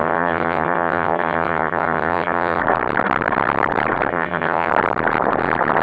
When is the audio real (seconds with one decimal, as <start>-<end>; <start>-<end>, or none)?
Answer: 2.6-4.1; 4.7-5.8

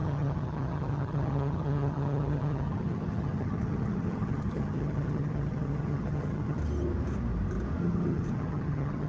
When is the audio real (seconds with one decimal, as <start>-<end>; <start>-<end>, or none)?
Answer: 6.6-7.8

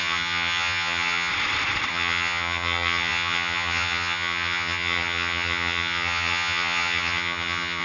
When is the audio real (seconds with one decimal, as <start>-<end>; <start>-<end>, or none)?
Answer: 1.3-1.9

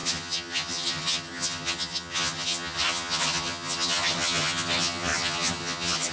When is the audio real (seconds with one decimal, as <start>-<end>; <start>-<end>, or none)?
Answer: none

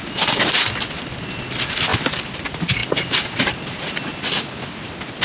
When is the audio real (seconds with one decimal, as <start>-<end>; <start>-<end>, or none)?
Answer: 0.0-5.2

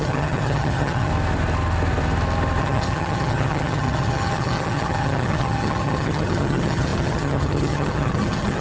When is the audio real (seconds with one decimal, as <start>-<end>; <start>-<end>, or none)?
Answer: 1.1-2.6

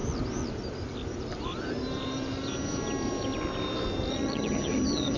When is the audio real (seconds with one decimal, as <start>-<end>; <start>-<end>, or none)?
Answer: 0.0-4.1